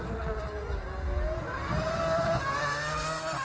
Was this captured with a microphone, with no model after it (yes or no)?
yes